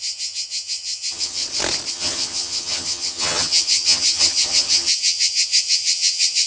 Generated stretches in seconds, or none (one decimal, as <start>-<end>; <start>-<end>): 0.0-1.4; 1.9-6.5